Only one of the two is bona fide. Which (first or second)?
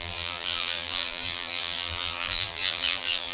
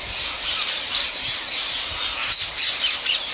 second